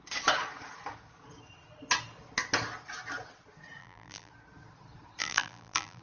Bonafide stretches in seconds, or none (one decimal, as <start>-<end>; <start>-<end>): 0.0-3.8; 4.3-5.2